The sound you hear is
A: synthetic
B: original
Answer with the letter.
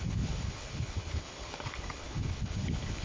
A